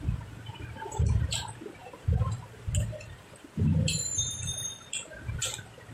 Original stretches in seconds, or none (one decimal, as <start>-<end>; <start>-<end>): 0.0-5.9